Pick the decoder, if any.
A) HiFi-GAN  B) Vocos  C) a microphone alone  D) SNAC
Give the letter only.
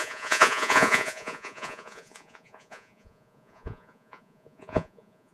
B